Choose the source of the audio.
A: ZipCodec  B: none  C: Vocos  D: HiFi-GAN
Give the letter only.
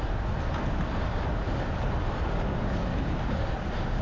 B